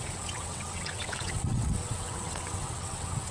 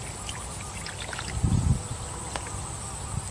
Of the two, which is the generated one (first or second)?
first